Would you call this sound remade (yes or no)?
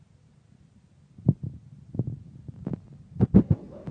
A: no